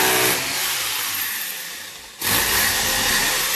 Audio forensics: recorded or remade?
recorded